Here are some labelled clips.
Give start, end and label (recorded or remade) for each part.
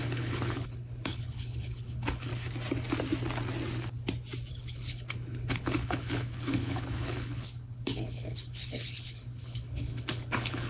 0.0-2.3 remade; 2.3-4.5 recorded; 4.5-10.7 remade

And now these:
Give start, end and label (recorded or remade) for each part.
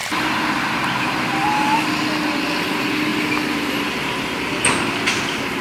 0.0-1.8 remade; 1.8-4.0 recorded; 4.0-4.7 remade; 4.7-5.6 recorded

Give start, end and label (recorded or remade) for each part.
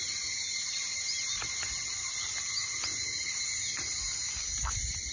0.0-5.1 recorded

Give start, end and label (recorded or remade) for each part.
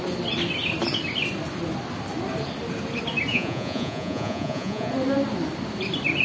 0.0-3.3 recorded; 3.3-4.9 remade; 4.9-6.2 recorded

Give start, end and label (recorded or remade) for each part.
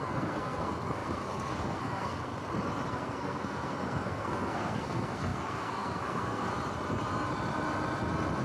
0.0-2.3 remade; 2.3-2.9 recorded; 2.9-6.5 remade; 6.5-8.4 recorded